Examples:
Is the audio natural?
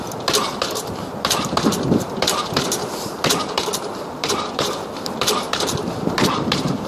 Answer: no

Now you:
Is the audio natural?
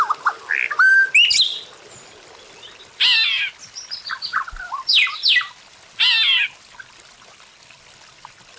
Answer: yes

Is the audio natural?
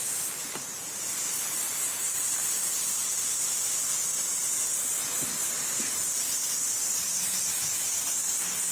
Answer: yes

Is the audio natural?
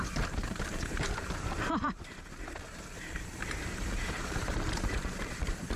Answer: no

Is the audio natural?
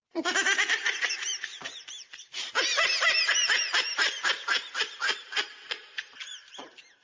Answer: no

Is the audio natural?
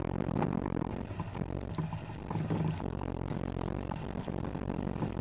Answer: yes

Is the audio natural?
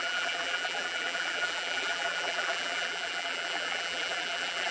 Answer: no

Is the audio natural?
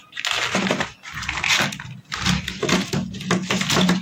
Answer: yes